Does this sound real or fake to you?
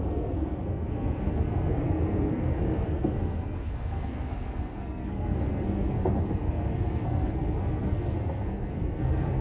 fake